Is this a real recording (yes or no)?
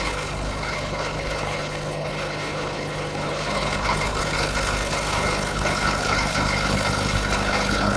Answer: no